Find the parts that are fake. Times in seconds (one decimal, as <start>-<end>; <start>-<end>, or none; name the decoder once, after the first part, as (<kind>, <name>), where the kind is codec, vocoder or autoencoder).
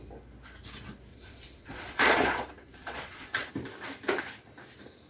1.1-3.5 (vocoder, Vocos)